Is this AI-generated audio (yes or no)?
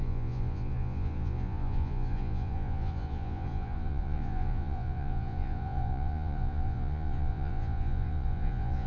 yes